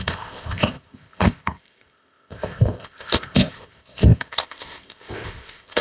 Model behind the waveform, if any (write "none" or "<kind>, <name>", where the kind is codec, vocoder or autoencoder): codec, ZipCodec